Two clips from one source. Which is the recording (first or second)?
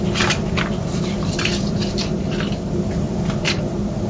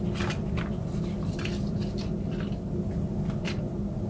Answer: second